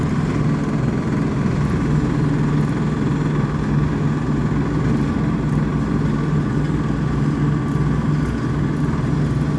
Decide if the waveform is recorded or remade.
recorded